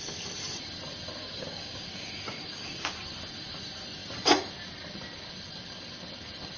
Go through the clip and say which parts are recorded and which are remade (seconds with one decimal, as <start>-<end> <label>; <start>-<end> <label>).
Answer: 0.0-1.2 recorded; 1.2-3.0 remade; 3.0-6.6 recorded